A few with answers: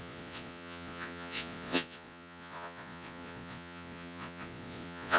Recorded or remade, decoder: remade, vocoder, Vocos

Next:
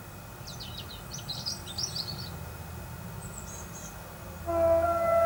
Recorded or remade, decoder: recorded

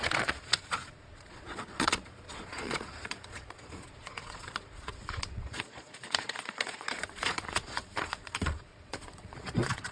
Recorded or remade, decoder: remade, vocoder, Vocos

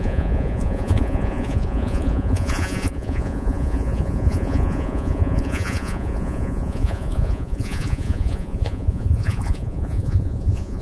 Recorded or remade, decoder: remade, vocoder, Vocos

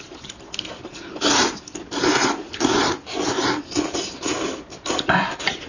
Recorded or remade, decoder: recorded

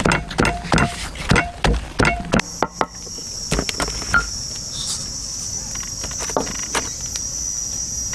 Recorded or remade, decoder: recorded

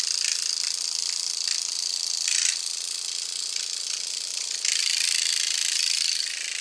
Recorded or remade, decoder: recorded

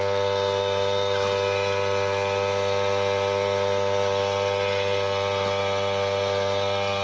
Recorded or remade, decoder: recorded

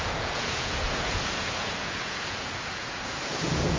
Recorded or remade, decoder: remade, vocoder, Vocos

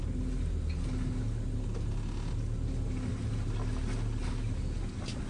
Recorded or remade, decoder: recorded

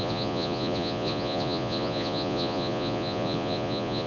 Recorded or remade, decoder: remade, vocoder, Vocos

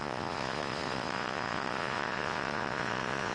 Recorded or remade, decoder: remade, vocoder, Vocos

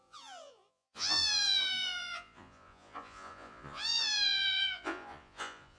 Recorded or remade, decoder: remade, vocoder, Vocos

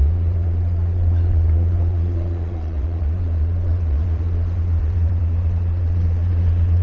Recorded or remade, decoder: remade, vocoder, Vocos